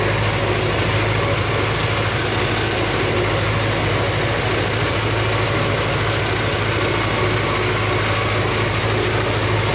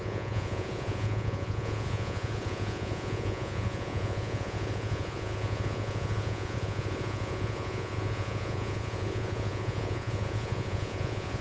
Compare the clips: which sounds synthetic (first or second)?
second